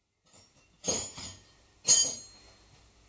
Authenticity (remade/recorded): recorded